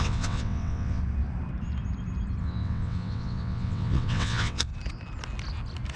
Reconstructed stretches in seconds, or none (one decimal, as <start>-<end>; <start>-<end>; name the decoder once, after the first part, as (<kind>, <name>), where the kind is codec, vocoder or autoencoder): 0.0-1.0 (vocoder, WaveNeXt); 2.4-4.7

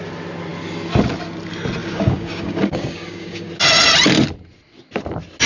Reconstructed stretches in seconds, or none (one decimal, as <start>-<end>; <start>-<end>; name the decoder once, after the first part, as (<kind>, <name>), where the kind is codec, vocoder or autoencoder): 1.8-3.5 (codec, DAC)

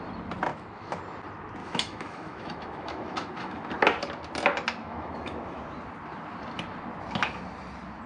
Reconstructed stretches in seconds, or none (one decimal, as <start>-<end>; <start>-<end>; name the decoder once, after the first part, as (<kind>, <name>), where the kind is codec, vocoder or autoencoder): 0.5-1.0 (autoencoder, DAC-VAE); 1.6-3.7; 4.8-5.6

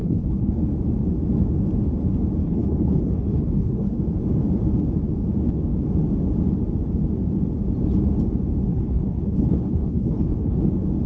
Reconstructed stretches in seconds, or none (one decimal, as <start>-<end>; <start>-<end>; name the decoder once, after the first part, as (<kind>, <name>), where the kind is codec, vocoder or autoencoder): 0.0-0.6 (codec, HILCodec); 2.4-4.0; 8.7-10.6

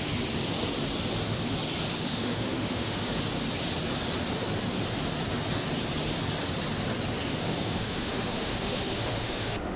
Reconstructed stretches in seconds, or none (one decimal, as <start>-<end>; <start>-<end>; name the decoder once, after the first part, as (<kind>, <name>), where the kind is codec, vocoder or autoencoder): 2.1-3.1 (autoencoder, DAC-VAE); 7.5-9.8

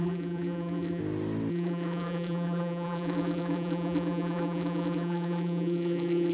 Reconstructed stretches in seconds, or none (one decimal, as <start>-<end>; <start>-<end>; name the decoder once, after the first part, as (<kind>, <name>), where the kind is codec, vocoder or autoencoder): 0.0-1.0 (vocoder, BigVGAN v2); 1.5-6.3

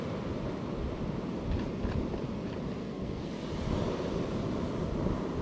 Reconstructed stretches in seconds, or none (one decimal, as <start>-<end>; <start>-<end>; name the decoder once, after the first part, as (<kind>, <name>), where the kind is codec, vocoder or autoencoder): 2.8-3.3 (codec, SNAC)